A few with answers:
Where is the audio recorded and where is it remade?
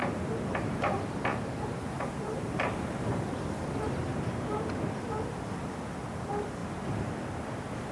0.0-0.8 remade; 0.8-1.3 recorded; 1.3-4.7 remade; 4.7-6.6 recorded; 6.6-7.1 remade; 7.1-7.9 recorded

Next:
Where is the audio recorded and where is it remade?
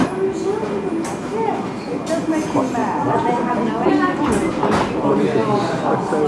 0.0-2.8 recorded; 2.8-3.9 remade; 3.9-4.4 recorded; 4.4-4.9 remade; 4.9-5.4 recorded; 5.4-6.3 remade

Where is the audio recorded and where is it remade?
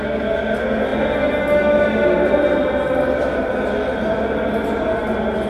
0.0-5.5 recorded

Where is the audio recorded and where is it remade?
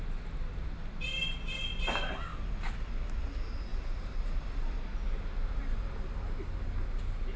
0.0-7.4 recorded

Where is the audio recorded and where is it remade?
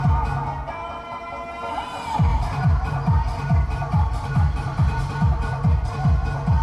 0.0-2.3 recorded; 2.3-5.9 remade; 5.9-6.6 recorded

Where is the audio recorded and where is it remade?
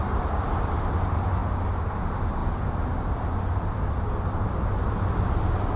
0.0-5.8 recorded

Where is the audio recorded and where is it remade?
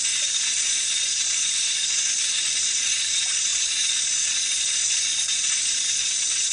0.0-6.5 recorded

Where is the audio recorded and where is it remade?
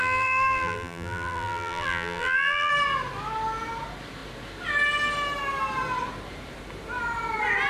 0.0-2.7 remade; 2.7-7.7 recorded